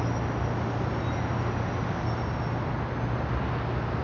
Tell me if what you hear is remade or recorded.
recorded